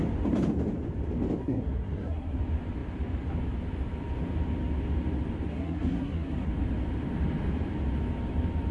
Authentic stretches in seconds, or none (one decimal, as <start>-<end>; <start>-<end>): 0.0-1.4; 2.4-5.5; 6.5-8.7